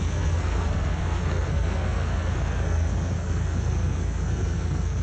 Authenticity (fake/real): fake